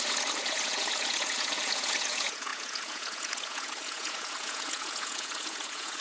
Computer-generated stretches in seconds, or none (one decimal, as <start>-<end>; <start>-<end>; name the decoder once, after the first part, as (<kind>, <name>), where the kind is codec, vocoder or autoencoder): 0.0-6.0 (vocoder, Vocos)